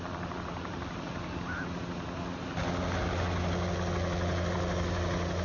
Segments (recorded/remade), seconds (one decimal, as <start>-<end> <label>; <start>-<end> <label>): 0.0-5.4 recorded